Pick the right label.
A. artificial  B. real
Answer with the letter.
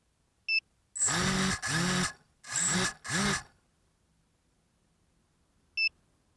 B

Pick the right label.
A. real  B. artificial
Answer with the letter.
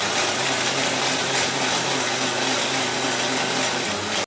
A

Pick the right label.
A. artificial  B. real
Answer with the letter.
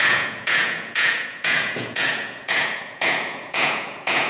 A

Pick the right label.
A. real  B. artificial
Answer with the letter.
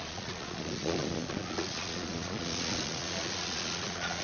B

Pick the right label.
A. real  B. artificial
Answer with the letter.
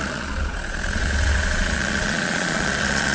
B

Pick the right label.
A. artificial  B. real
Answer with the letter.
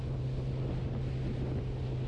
B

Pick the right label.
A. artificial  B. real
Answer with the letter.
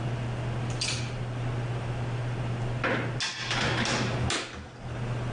B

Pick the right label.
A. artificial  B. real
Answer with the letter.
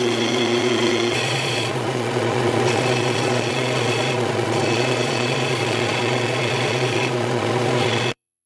A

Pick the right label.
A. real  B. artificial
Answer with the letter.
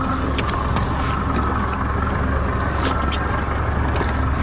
A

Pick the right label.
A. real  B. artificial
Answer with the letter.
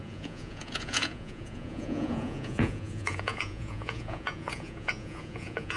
B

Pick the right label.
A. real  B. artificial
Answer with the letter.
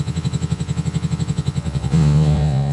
B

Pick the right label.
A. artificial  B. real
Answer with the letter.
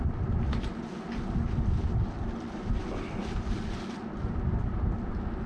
B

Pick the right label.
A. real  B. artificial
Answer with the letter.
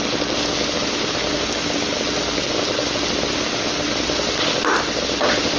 A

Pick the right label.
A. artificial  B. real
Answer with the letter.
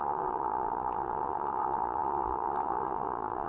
A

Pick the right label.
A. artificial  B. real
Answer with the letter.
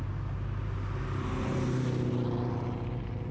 B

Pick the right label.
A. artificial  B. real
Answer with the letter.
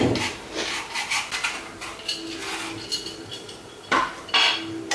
B